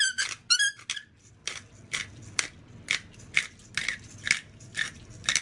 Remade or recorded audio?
recorded